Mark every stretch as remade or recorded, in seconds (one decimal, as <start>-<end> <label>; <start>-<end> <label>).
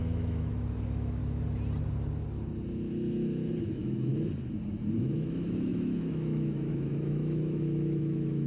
0.0-1.2 remade; 1.2-3.6 recorded; 3.6-4.1 remade; 4.1-5.0 recorded; 5.0-8.5 remade